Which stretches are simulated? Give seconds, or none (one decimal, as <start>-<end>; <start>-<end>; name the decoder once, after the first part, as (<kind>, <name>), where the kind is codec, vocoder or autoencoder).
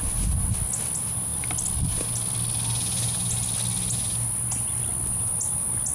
none